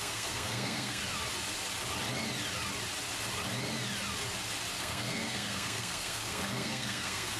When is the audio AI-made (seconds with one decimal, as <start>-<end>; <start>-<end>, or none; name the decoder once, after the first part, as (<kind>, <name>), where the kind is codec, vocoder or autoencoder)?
0.0-1.0 (codec, SNAC); 4.8-7.4